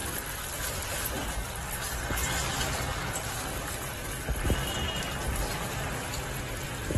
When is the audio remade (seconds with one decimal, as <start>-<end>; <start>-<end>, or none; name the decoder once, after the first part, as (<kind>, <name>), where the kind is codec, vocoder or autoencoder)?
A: 0.7-2.2 (vocoder, BigVGAN v2); 3.4-4.0; 6.2-7.0

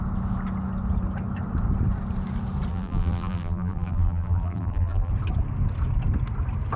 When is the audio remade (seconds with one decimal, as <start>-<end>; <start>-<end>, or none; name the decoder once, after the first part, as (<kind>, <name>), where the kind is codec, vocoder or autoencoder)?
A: 2.7-5.1 (vocoder, BigVGAN v2)

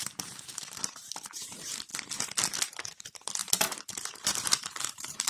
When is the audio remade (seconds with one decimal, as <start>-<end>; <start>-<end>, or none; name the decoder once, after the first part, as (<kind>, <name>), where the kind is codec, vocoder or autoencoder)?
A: 0.0-1.9 (vocoder, BigVGAN v2); 2.9-5.3

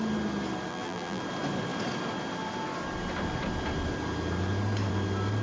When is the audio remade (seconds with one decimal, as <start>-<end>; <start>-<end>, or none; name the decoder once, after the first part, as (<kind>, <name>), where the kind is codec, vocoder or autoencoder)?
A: 0.7-1.2 (vocoder, BigVGAN v2)

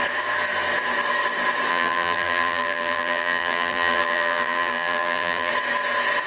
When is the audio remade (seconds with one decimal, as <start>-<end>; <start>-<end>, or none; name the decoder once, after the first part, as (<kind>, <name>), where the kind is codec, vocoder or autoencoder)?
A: 1.7-5.5 (vocoder, BigVGAN v2)

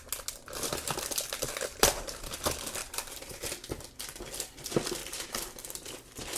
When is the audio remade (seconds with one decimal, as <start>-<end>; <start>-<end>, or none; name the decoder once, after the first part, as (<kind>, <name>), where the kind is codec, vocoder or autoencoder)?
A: 1.7-2.3 (vocoder, BigVGAN v2); 2.8-3.5; 5.0-5.7

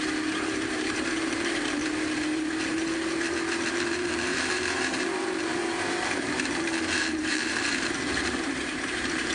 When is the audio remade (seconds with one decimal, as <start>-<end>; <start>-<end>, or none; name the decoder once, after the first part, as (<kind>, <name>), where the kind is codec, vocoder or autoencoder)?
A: 0.0-9.3 (vocoder, BigVGAN v2)